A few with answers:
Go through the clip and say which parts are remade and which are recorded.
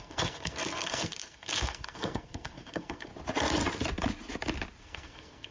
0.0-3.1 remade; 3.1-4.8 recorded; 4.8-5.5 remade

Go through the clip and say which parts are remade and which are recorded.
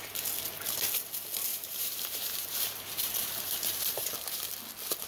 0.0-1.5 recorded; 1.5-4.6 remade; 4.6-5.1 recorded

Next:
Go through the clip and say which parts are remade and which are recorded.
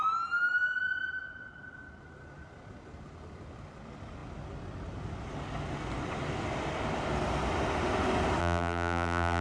0.0-8.4 recorded; 8.4-9.4 remade